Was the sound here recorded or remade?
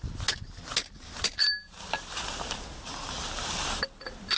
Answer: recorded